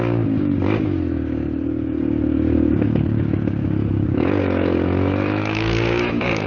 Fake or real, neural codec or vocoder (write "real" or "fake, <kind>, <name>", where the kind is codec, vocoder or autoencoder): fake, codec, DAC